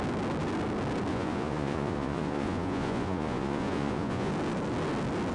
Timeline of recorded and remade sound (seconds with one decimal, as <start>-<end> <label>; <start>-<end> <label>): 0.0-1.1 recorded; 1.1-4.3 remade; 4.3-5.3 recorded